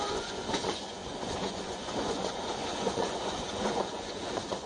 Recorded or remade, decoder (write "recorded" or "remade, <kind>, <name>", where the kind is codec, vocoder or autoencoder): remade, vocoder, Vocos